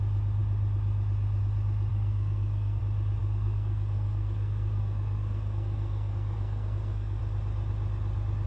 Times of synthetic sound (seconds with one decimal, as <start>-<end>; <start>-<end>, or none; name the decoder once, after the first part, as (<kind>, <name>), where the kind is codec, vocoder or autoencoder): 1.9-2.8 (codec, SNAC); 3.2-7.2